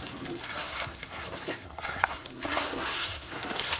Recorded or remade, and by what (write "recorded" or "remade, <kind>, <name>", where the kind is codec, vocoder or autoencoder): remade, codec, SNAC